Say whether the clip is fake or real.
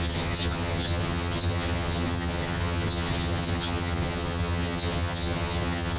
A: fake